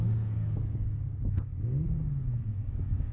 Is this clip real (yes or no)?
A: no